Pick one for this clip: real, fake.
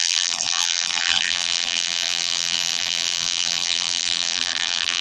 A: fake